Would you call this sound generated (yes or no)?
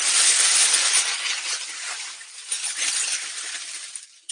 no